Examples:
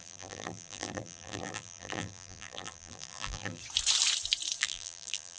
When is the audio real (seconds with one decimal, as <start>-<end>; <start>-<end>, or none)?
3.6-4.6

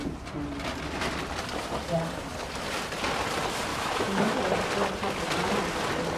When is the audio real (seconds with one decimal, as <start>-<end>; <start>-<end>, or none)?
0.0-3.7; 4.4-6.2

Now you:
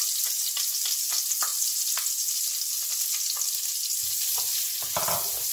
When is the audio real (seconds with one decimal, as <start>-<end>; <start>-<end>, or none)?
0.0-5.5

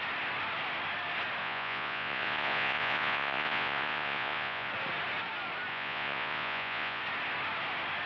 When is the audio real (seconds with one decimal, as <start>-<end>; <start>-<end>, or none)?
0.0-1.4; 4.7-5.7; 7.0-8.1